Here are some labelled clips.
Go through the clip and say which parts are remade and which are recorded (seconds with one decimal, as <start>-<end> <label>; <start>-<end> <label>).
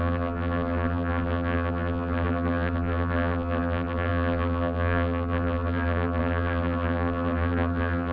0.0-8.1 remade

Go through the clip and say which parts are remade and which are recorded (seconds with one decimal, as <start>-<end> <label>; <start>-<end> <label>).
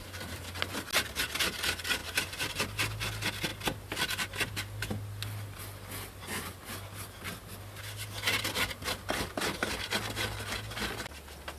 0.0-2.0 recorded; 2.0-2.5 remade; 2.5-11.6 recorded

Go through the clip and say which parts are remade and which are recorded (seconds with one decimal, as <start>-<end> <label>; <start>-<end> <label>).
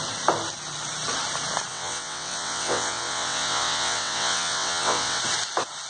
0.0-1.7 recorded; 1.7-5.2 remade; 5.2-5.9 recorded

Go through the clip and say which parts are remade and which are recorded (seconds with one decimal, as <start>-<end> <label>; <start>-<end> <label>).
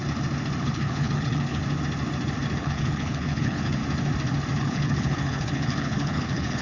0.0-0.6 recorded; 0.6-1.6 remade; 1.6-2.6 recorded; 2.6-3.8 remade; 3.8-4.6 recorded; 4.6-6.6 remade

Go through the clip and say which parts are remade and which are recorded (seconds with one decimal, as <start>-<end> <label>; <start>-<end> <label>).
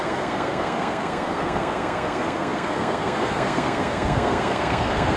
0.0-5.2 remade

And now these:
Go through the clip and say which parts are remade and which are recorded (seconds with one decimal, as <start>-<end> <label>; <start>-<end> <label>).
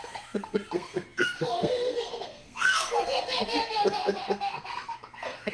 0.0-5.5 remade